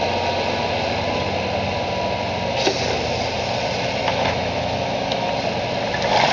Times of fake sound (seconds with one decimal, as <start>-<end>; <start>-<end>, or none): 4.0-5.3

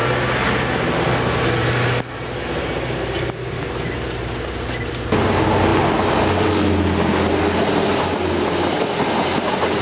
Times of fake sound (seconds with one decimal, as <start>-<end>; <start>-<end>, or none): none

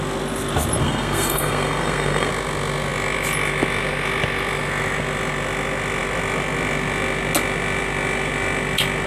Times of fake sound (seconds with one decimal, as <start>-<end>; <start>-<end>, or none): 0.8-2.3